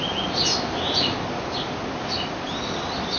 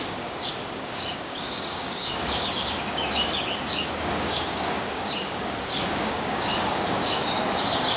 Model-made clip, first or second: second